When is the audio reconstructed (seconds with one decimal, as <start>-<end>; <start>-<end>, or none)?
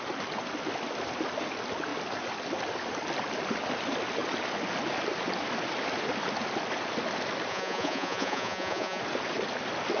7.5-9.0